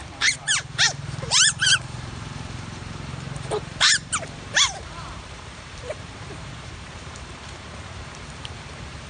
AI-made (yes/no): yes